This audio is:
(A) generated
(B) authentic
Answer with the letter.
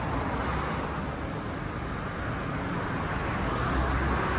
B